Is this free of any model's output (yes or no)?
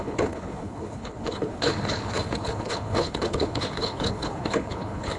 no